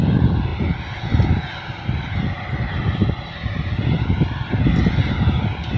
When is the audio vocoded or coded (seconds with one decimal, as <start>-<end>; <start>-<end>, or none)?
none